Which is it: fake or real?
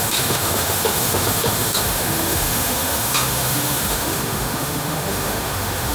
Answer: fake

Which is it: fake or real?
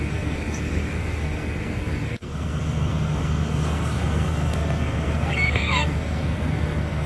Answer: fake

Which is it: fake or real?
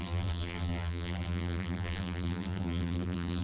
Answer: fake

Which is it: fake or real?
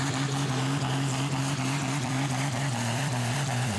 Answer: fake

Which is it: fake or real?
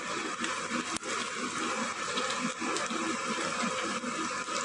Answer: real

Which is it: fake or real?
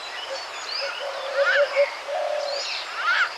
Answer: fake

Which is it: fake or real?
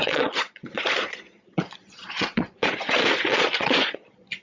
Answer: fake